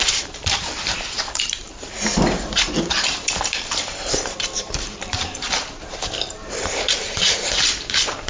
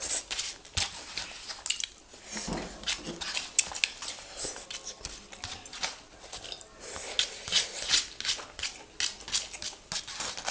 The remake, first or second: first